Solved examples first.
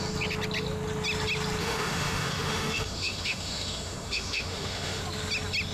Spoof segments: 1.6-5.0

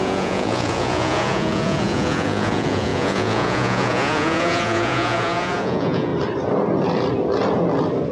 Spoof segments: 0.0-6.1

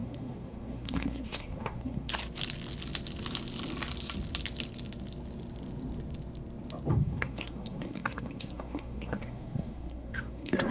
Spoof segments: 0.0-2.1; 6.9-10.7

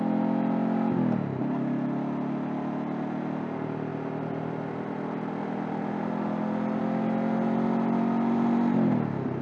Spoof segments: none

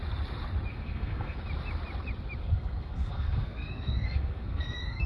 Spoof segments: 0.7-1.4; 2.4-5.1

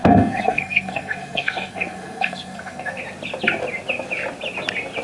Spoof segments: 0.0-3.0